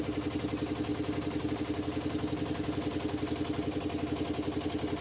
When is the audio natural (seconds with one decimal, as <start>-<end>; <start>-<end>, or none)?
0.0-5.0